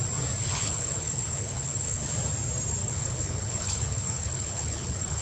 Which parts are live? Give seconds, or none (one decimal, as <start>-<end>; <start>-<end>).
0.0-0.4; 2.1-2.8